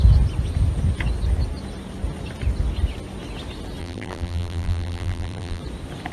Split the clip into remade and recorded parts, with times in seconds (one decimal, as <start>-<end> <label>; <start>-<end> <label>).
0.0-3.8 recorded; 3.8-5.6 remade; 5.6-6.1 recorded